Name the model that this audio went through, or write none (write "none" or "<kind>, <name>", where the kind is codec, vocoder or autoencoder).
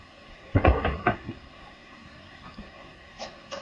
codec, SNAC